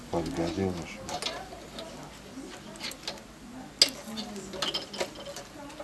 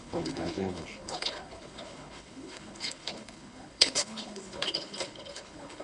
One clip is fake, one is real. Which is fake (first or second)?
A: second